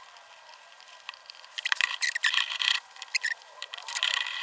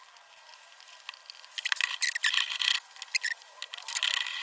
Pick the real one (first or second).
second